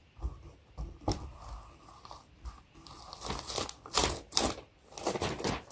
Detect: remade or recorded recorded